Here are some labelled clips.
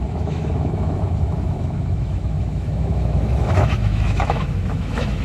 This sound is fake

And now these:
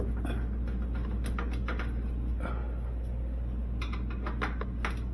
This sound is real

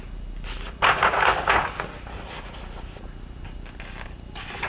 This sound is real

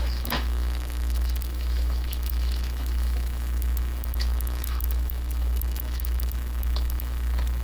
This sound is fake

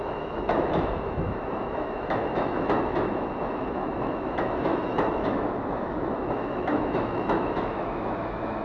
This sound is fake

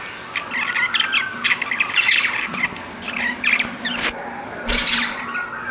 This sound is real